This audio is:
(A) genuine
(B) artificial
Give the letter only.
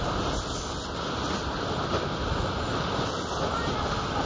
A